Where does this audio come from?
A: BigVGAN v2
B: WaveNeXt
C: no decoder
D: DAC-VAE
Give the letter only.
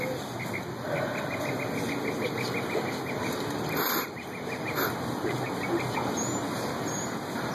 C